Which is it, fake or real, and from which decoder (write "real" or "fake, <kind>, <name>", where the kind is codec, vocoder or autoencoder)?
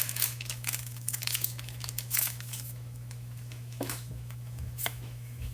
fake, autoencoder, DAC-VAE